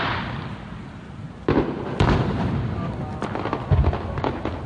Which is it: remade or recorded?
recorded